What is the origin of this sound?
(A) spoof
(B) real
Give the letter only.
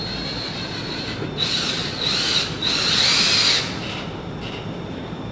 B